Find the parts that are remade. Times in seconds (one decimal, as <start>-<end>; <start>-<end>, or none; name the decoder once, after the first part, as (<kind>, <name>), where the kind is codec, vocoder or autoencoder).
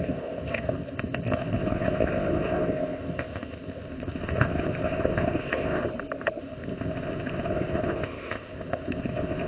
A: 0.0-5.8 (codec, ZipCodec); 6.4-9.5